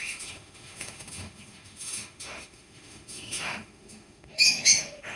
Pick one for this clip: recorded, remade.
remade